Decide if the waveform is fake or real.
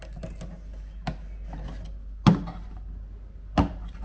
real